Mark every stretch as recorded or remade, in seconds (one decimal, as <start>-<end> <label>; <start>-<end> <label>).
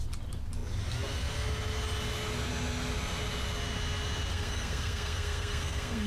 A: 0.0-4.3 recorded; 4.3-6.1 remade